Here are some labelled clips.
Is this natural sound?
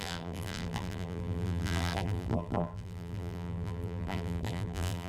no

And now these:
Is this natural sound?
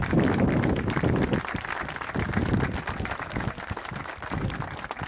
yes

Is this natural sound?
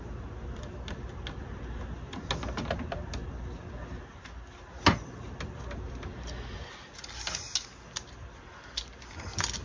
yes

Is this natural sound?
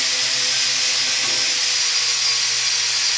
yes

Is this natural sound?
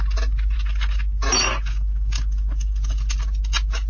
yes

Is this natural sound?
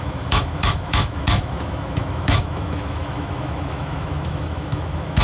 no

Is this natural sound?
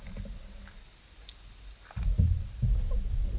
yes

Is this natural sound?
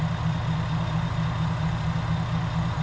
yes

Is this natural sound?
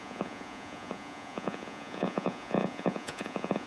no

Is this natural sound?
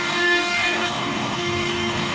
no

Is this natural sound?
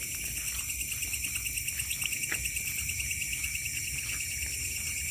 yes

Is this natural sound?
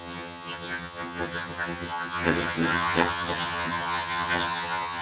no